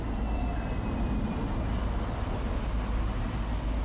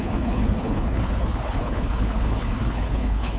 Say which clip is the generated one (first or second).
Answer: second